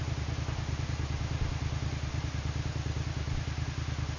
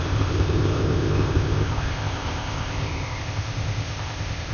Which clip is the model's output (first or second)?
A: second